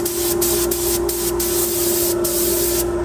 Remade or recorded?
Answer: recorded